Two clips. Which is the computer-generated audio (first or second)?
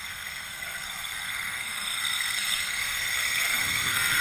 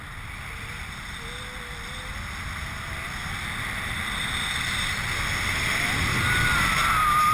first